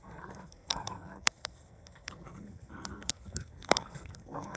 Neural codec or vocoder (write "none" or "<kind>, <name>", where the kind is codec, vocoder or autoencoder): codec, SNAC